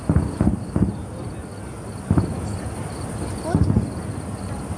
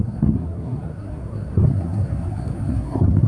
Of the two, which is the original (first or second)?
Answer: first